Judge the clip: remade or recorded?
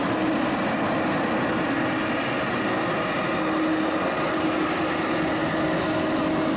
recorded